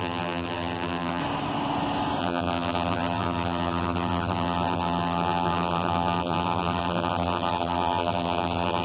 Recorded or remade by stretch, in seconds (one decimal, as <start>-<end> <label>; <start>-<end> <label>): 0.0-1.2 remade; 1.2-2.2 recorded; 2.2-8.8 remade